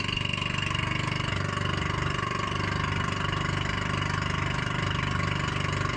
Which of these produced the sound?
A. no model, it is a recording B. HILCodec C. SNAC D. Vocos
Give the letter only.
A